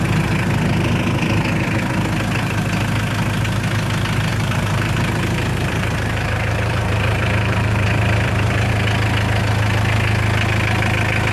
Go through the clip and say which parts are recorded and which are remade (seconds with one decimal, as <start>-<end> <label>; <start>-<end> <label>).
0.0-4.3 recorded; 4.3-8.7 remade; 8.7-11.3 recorded